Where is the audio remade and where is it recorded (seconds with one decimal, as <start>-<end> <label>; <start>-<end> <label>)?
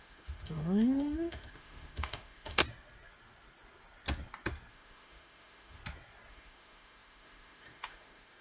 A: 0.0-2.6 remade; 2.6-4.7 recorded; 4.7-5.8 remade; 5.8-6.3 recorded; 6.3-8.4 remade